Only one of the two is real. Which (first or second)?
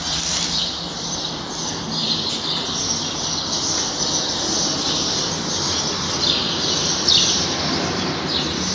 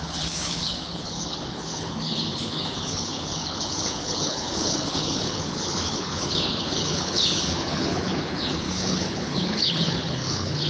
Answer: first